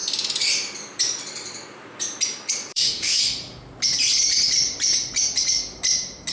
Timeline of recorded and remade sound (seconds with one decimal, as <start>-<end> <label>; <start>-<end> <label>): 0.0-2.7 recorded; 2.7-3.2 remade; 3.2-6.3 recorded